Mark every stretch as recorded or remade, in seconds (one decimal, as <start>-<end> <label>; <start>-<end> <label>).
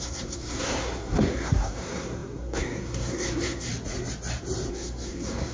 0.0-3.7 remade; 3.7-4.7 recorded; 4.7-5.5 remade